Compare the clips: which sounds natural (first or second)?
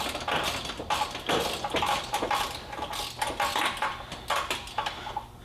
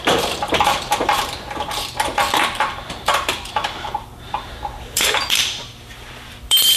first